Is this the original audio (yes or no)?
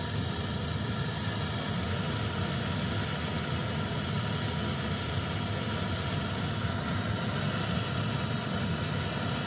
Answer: yes